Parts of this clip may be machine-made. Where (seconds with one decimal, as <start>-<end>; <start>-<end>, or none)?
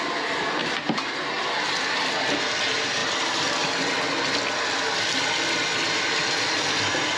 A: 0.6-1.4; 3.0-3.5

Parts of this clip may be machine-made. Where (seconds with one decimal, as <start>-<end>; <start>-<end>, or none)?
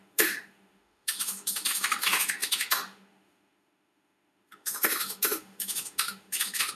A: 0.0-6.7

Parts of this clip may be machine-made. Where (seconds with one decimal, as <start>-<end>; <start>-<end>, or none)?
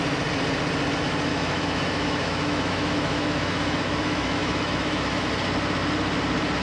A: 1.3-5.3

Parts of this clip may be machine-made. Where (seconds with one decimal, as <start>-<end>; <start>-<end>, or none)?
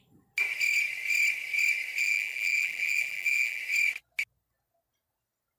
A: 2.0-3.6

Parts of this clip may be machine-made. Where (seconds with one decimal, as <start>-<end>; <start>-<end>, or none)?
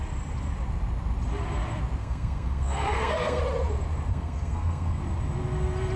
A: 2.0-3.4; 4.1-5.0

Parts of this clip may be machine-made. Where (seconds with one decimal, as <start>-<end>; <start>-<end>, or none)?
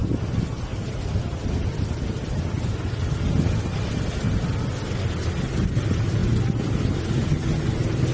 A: none